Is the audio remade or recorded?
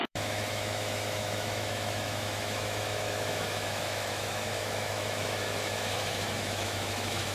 remade